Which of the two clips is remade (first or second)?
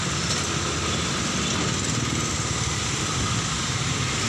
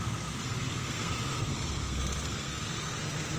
second